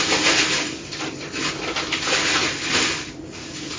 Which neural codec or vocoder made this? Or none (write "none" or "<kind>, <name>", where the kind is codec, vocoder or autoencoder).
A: none